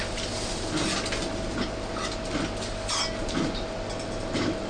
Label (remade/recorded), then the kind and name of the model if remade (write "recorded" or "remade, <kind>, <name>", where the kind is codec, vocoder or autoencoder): recorded